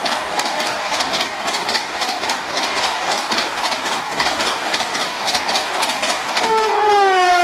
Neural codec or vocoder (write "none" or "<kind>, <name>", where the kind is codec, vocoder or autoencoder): codec, DAC